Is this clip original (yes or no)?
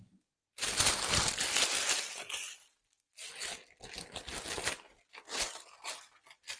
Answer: yes